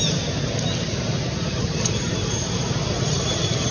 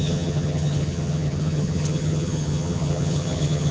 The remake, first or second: second